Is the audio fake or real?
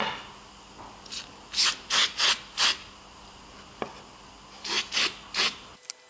real